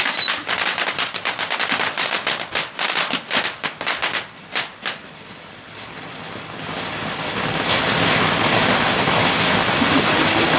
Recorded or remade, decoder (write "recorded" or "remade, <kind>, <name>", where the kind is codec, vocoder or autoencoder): remade, vocoder, BigVGAN v2